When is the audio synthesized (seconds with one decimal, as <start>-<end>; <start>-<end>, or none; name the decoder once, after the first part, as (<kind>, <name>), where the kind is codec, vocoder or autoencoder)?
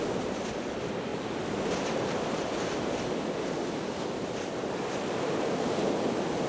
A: none